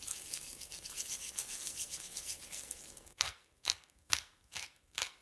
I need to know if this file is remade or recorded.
remade